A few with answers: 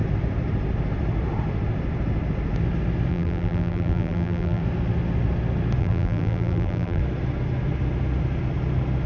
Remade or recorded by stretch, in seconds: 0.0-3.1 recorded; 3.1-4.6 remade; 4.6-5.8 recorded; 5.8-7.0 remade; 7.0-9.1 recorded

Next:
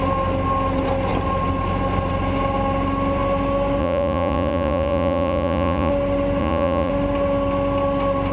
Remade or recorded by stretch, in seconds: 0.0-3.8 recorded; 3.8-5.9 remade; 5.9-6.4 recorded; 6.4-6.9 remade; 6.9-8.3 recorded

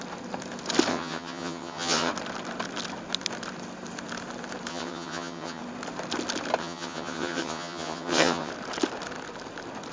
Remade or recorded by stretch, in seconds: 0.0-0.9 recorded; 0.9-2.1 remade; 2.1-4.7 recorded; 4.7-5.6 remade; 5.6-6.6 recorded; 6.6-8.5 remade; 8.5-9.9 recorded